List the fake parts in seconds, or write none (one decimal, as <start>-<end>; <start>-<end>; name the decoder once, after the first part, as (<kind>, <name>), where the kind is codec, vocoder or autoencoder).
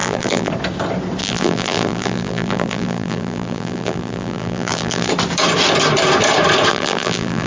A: 0.0-0.5 (vocoder, BigVGAN v2); 1.2-5.1; 6.7-7.5